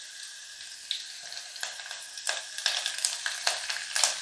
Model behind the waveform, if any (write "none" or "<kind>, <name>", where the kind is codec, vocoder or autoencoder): none